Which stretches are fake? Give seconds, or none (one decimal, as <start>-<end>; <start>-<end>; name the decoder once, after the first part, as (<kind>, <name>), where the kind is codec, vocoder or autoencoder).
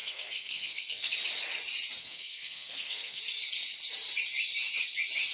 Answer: 0.0-1.1 (codec, SNAC); 2.0-3.2